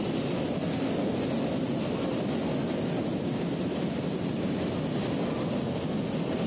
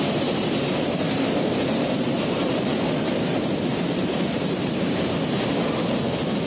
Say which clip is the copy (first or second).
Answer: second